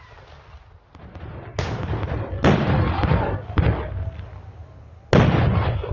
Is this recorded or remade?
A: recorded